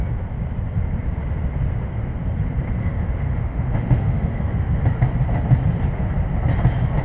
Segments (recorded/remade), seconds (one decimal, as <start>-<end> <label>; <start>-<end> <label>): 0.0-2.8 recorded; 2.8-4.8 remade; 4.8-7.0 recorded